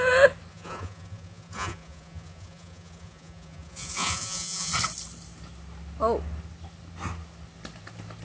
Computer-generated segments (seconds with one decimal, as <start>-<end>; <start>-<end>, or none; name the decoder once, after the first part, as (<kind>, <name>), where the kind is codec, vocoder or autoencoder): 0.5-4.7 (vocoder, Vocos)